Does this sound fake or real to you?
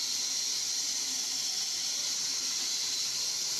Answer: fake